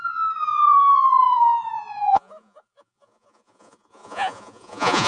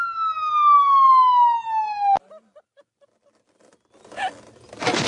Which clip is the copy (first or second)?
first